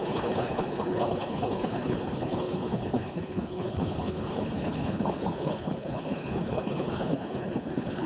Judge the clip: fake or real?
fake